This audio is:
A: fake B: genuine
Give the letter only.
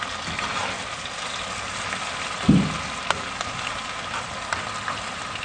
B